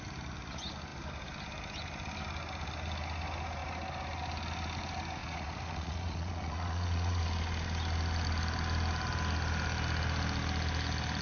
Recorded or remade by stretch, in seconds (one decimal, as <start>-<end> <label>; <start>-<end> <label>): 0.0-5.2 recorded; 5.2-7.2 remade; 7.2-11.2 recorded